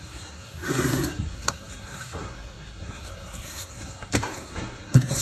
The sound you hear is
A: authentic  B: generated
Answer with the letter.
B